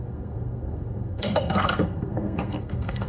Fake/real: fake